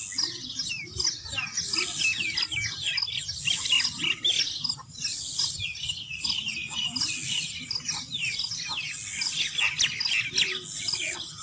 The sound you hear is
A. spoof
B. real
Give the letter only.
B